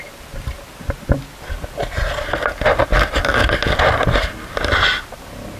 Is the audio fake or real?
real